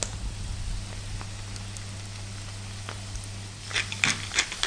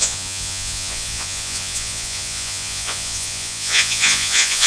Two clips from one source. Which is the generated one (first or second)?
second